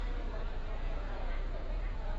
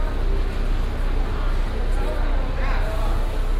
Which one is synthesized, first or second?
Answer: first